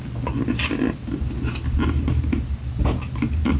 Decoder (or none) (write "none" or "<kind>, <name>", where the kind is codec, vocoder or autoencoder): none